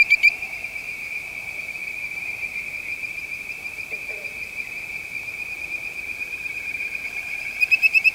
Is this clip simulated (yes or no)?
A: yes